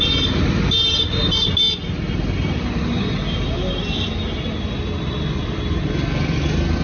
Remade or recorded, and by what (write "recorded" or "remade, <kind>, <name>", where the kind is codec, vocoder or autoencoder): recorded